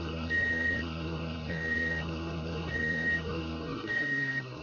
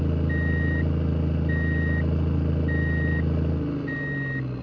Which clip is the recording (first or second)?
second